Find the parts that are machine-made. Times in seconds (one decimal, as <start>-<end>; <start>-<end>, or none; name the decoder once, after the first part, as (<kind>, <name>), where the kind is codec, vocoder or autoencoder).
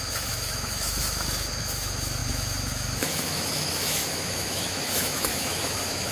0.0-6.1 (autoencoder, DAC-VAE)